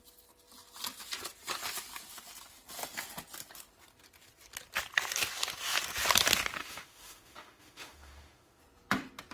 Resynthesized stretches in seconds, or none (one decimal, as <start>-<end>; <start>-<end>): 6.6-8.6

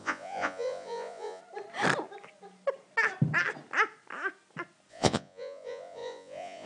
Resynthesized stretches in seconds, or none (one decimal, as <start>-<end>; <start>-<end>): 0.0-1.4; 4.9-6.7